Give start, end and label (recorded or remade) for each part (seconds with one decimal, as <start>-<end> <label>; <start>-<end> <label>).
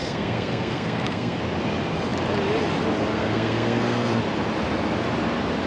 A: 0.0-1.4 remade; 1.4-3.1 recorded; 3.1-4.2 remade; 4.2-5.7 recorded